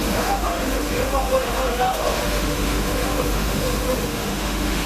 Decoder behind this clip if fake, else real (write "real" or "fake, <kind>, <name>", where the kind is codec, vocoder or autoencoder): fake, autoencoder, DAC-VAE